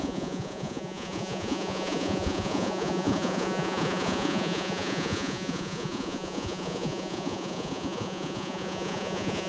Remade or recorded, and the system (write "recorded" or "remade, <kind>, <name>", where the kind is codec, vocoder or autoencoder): remade, vocoder, Vocos